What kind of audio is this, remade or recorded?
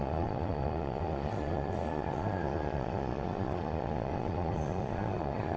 remade